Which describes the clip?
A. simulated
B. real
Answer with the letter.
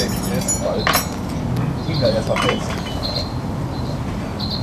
B